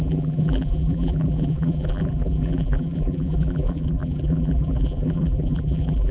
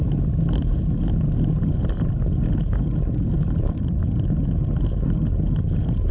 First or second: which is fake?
first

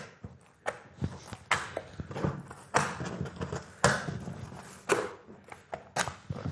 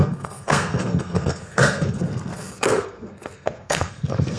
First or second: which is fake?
second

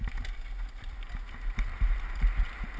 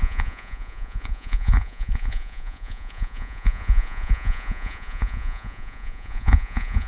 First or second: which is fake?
second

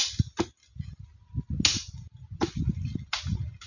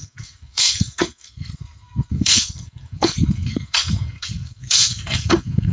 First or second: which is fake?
second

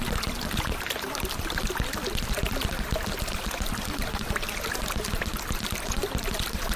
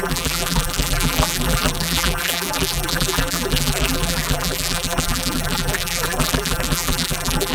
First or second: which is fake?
second